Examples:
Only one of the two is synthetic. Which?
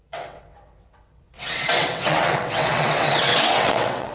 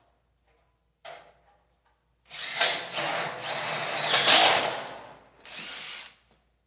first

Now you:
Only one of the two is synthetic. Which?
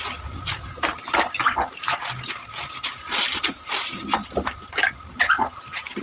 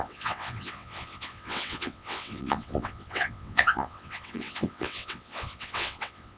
second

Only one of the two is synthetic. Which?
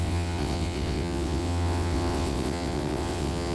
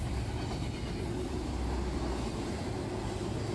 first